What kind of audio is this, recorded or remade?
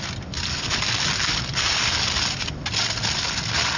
recorded